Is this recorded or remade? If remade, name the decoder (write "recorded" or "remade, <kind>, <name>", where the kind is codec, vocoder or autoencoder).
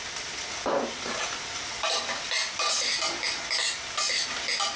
recorded